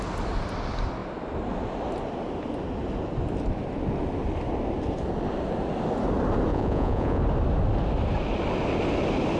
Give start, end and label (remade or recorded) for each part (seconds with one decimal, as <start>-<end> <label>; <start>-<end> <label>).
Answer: 0.0-6.5 recorded; 6.5-7.2 remade; 7.2-9.4 recorded